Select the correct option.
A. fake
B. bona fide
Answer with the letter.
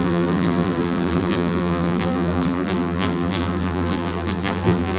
A